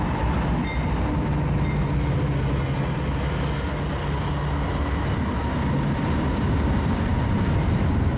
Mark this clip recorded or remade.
recorded